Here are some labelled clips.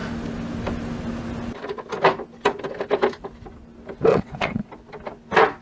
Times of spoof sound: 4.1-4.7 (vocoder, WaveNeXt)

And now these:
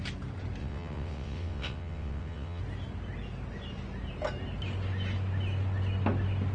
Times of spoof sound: 0.6-2.6 (vocoder, WaveNeXt)